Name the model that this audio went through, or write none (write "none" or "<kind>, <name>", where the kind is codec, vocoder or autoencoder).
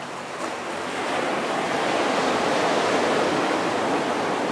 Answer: none